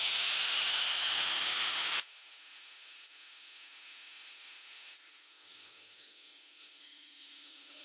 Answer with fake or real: fake